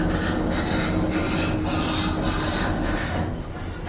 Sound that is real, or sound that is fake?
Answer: real